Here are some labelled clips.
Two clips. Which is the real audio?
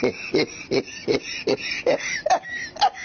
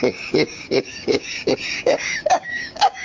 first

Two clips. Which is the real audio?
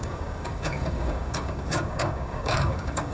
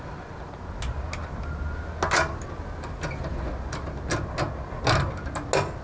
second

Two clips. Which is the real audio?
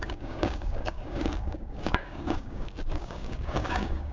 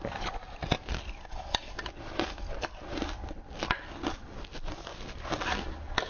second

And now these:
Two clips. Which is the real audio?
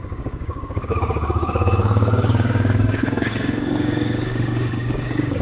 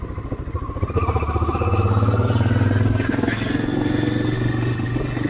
second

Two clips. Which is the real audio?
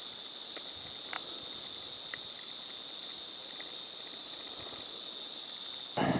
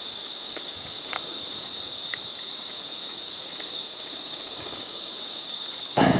first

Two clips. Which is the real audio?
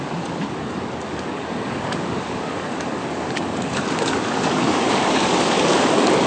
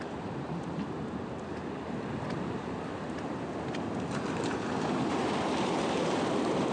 second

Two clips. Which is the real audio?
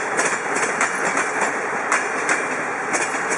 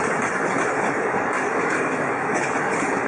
first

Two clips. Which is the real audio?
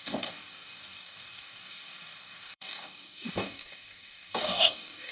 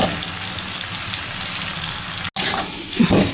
second